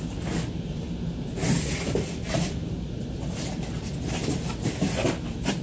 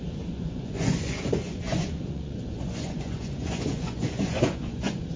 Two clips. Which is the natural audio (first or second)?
first